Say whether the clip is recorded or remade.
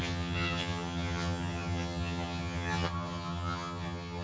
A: remade